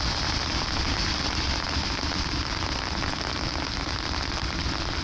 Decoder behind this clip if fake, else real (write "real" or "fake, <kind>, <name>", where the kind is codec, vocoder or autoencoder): real